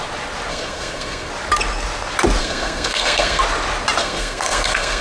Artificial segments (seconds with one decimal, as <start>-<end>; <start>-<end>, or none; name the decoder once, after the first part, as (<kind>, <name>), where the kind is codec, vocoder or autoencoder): 0.5-1.3 (codec, SNAC); 2.4-3.4; 4.0-5.0